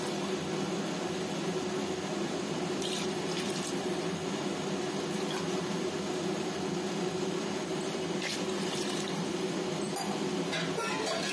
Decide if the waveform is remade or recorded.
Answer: recorded